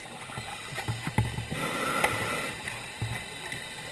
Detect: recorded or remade recorded